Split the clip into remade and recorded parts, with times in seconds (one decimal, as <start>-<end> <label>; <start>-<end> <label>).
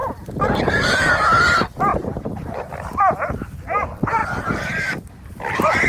0.0-1.1 remade; 1.1-1.9 recorded; 1.9-2.7 remade; 2.7-4.2 recorded; 4.2-5.4 remade; 5.4-5.9 recorded